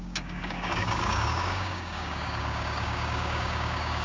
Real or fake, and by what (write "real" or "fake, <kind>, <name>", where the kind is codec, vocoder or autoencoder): fake, codec, DAC